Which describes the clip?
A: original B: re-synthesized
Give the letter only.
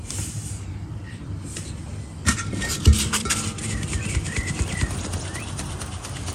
B